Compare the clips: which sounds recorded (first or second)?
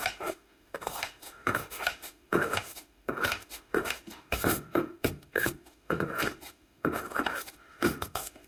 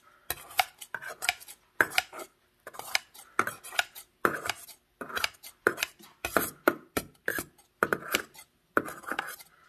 second